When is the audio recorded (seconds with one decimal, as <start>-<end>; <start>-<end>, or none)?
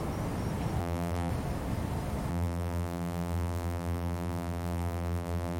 0.0-0.8; 1.3-2.3